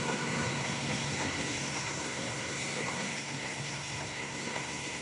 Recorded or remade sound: remade